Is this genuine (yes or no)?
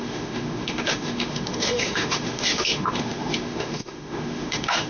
no